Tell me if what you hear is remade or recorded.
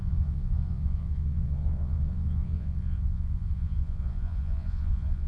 remade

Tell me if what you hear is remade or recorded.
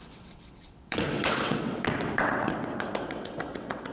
remade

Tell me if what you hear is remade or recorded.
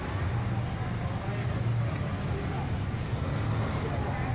recorded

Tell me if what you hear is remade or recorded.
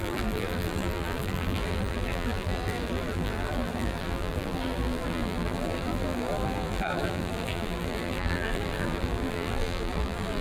remade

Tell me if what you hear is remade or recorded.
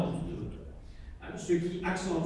remade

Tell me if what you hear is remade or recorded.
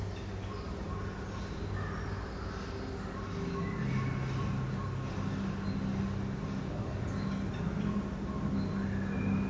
recorded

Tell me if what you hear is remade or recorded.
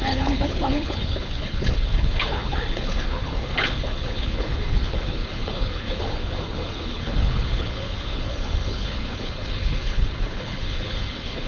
remade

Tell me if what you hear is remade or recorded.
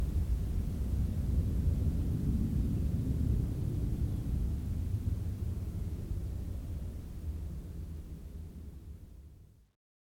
recorded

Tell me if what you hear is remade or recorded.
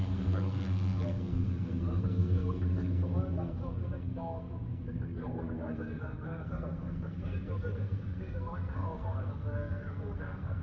remade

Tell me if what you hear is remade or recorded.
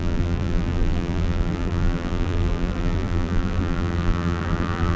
remade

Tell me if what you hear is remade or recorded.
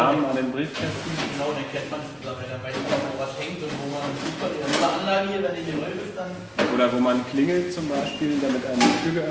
recorded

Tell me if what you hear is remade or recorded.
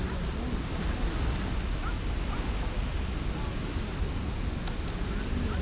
recorded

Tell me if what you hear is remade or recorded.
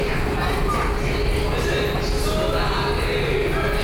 recorded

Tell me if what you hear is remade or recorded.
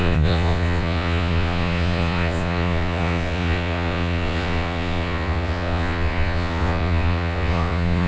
remade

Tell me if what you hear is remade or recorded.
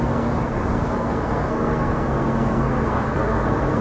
remade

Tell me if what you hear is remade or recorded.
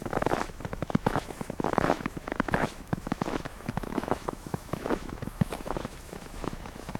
remade